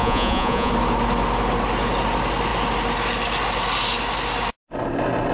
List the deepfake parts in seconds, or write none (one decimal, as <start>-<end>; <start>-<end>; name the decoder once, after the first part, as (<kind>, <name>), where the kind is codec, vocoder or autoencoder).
0.0-0.7 (vocoder, Vocos)